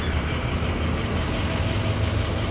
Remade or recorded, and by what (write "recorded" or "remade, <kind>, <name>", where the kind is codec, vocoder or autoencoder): recorded